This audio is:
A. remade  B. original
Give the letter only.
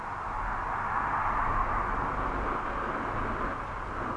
B